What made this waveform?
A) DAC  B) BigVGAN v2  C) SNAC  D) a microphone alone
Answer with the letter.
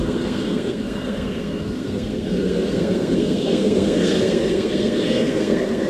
C